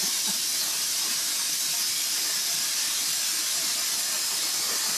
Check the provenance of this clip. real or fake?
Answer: real